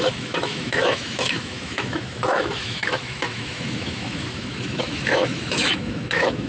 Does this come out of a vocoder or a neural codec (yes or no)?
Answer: yes